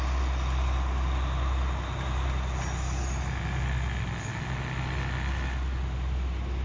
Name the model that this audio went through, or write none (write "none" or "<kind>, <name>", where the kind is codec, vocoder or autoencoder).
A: none